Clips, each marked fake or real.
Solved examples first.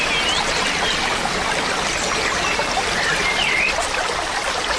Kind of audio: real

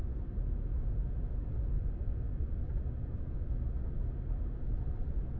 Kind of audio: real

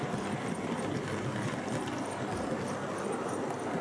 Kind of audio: real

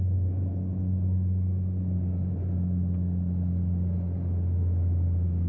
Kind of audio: real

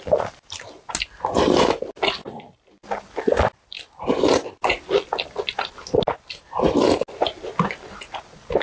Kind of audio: real